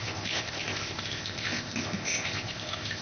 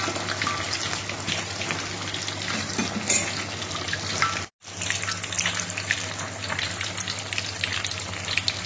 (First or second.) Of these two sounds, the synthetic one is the first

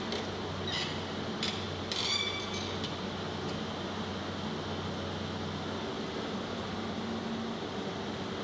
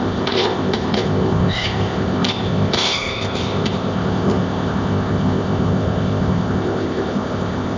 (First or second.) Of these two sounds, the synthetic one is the second